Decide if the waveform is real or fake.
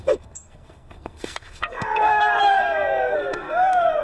fake